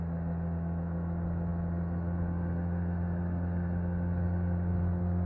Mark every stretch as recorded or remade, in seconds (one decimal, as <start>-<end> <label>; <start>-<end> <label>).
0.0-5.3 recorded